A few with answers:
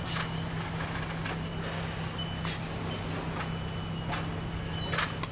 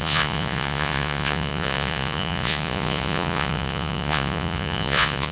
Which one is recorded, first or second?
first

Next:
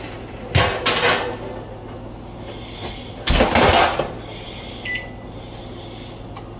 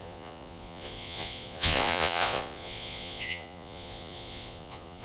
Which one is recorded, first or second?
first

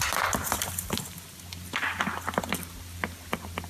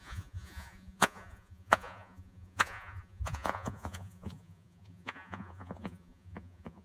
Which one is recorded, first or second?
first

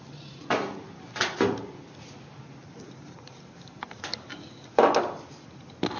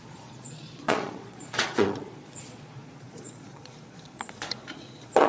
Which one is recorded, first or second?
first